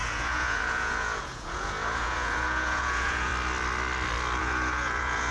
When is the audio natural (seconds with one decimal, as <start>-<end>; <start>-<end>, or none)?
3.3-4.4